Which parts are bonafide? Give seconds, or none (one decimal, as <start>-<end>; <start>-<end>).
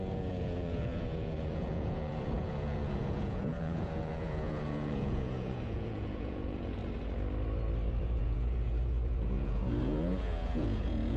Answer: 6.8-8.0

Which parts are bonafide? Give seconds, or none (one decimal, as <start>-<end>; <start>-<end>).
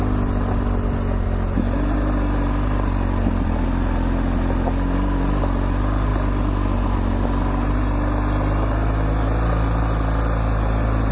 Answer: 0.0-11.1